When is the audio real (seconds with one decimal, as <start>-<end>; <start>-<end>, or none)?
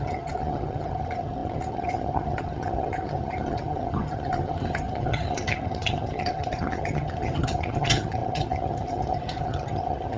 none